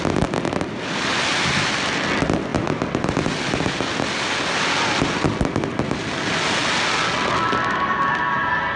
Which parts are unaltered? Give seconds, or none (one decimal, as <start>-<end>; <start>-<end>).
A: 0.0-8.8